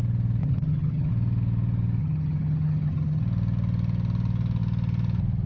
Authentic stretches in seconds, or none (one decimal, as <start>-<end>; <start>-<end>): 0.0-0.4; 1.1-2.0; 3.2-5.5